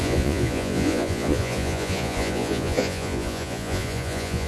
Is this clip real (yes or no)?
no